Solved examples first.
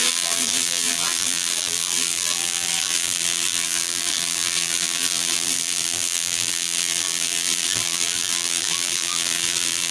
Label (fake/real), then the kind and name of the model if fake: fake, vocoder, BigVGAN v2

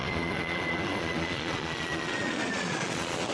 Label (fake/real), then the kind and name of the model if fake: fake, vocoder, Vocos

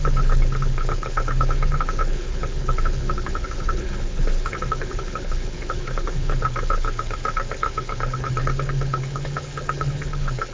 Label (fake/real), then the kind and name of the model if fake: fake, codec, HILCodec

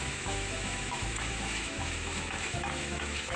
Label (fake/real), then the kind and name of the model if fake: fake, autoencoder, DAC-VAE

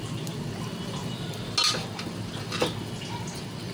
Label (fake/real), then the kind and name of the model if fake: real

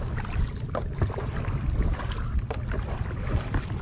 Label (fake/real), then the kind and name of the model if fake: real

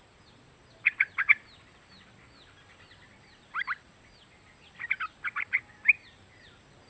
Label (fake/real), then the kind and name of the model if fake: real